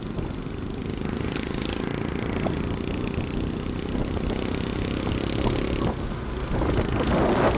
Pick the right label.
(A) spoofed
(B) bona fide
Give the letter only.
B